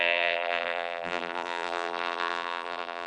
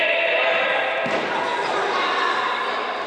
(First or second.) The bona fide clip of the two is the second